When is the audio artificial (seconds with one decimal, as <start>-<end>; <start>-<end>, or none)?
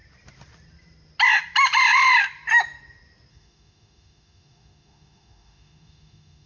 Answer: 3.3-6.5